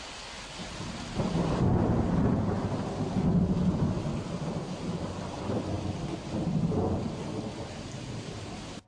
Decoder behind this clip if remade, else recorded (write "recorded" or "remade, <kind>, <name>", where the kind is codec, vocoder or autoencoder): recorded